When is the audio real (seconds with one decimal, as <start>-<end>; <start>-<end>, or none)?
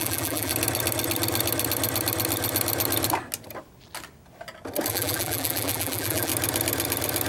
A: 0.5-4.9; 6.3-7.3